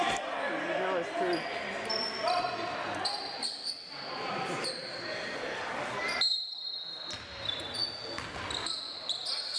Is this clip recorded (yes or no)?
yes